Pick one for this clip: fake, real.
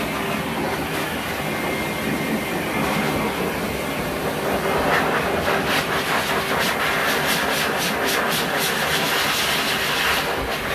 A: real